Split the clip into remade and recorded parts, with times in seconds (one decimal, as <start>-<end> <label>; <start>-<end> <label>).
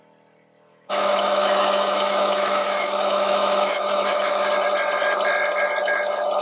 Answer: 0.0-0.7 recorded; 0.7-4.5 remade; 4.5-6.4 recorded